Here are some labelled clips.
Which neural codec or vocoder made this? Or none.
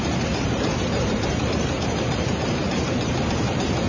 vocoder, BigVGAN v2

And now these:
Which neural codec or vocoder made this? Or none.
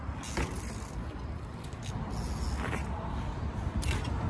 none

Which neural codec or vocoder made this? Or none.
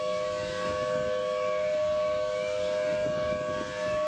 codec, DAC